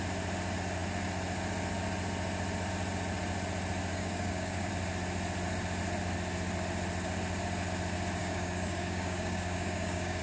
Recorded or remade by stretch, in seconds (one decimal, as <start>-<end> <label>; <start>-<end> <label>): 0.0-3.9 recorded; 3.9-4.7 remade; 4.7-8.2 recorded; 8.2-10.2 remade